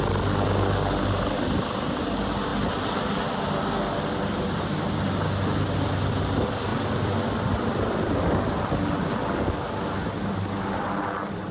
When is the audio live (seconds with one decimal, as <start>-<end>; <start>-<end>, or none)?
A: 0.0-6.7; 8.1-11.5